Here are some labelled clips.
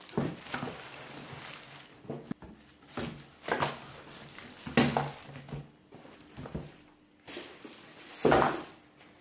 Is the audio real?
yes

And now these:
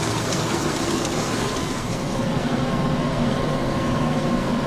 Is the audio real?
no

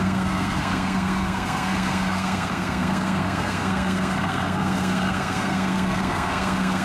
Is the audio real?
no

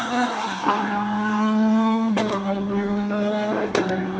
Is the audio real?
no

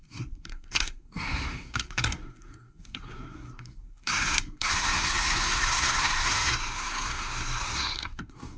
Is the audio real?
no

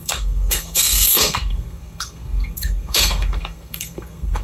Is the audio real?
no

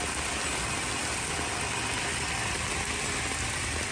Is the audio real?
yes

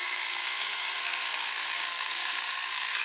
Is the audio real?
no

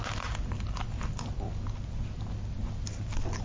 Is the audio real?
yes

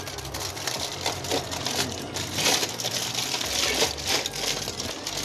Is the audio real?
yes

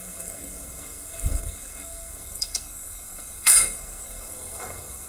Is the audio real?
no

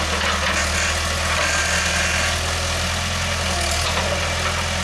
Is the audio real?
yes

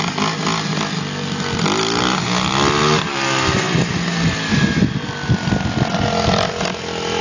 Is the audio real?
yes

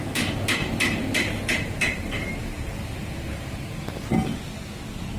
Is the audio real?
yes